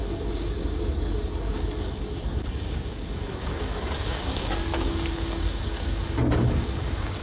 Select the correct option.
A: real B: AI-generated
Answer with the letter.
B